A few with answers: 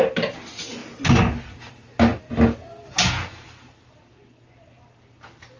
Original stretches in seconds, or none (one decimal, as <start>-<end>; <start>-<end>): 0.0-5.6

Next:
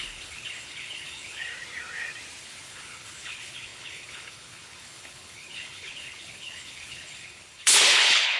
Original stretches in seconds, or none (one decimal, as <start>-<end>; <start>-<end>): 1.5-2.4

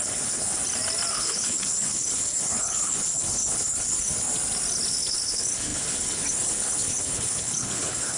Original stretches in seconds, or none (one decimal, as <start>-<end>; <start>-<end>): 0.6-1.1; 4.3-4.9

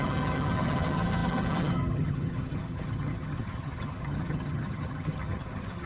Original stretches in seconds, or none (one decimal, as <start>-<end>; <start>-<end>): none

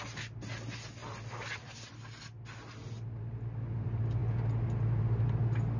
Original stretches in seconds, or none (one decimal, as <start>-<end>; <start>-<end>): 0.0-5.8

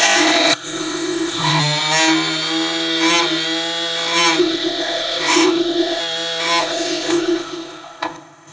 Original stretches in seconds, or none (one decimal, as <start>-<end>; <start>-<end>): 1.6-4.4; 6.0-6.6

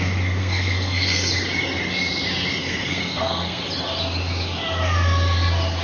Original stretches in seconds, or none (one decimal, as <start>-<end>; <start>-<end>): 0.0-0.4; 1.3-2.6; 3.6-5.8